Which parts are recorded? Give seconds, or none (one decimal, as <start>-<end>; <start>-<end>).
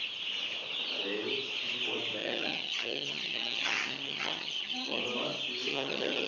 0.0-2.2; 5.0-5.7